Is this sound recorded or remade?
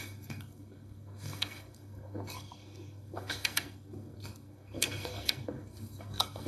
remade